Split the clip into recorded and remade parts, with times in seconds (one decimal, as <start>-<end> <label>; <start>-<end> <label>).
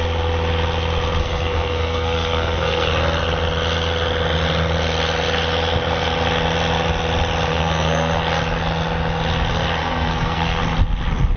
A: 0.0-1.2 recorded; 1.2-2.9 remade; 2.9-7.5 recorded; 7.5-8.2 remade; 8.2-9.8 recorded; 9.8-10.6 remade; 10.6-11.4 recorded